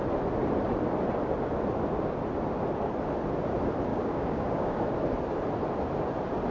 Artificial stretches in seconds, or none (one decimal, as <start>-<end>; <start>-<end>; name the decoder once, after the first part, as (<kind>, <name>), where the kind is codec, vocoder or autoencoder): 3.9-4.8 (codec, DAC)